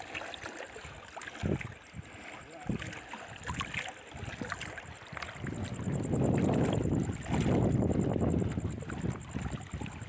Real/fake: real